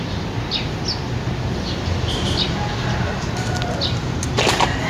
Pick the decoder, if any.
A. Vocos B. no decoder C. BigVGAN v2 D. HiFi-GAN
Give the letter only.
B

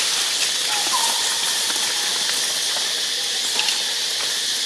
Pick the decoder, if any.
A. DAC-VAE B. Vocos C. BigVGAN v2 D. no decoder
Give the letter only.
D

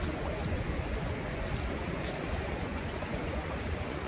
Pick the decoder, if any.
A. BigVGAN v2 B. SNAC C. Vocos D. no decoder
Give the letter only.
C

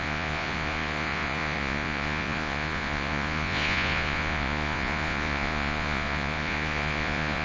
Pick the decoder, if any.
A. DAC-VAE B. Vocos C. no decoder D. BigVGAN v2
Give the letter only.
B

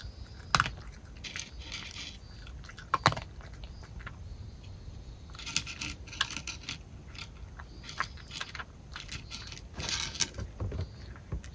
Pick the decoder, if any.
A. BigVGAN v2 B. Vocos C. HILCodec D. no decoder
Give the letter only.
D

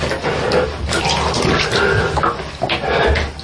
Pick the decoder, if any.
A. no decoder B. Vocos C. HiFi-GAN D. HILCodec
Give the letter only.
A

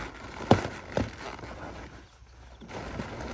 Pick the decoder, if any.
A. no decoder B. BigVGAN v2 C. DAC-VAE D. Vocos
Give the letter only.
A